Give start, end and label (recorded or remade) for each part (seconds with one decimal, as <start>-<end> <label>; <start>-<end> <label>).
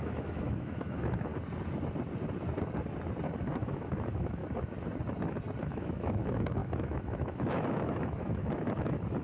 0.0-1.3 remade; 1.3-3.5 recorded; 3.5-4.4 remade; 4.4-5.6 recorded; 5.6-9.2 remade